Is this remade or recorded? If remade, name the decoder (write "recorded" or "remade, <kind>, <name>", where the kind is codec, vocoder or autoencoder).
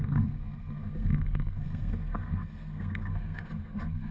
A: remade, codec, SNAC